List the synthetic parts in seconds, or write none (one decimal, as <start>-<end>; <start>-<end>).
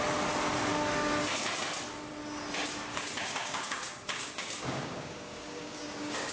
2.9-6.3